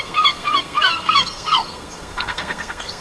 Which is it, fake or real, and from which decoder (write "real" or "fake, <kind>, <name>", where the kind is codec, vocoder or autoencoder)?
fake, codec, SNAC